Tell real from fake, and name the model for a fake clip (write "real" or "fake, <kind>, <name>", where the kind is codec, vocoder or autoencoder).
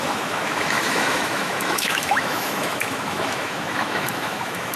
fake, autoencoder, DAC-VAE